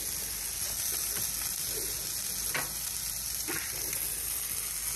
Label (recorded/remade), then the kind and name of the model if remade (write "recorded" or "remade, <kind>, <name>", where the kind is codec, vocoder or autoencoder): recorded